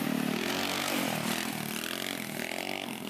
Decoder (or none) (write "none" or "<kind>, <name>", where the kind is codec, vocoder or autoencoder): none